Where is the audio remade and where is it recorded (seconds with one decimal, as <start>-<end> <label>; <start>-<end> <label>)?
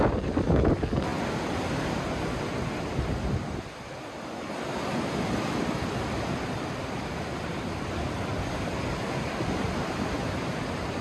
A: 0.0-11.0 recorded